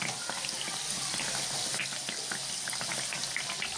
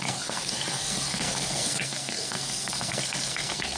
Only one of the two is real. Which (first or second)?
first